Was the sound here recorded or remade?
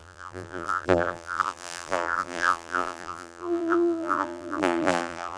remade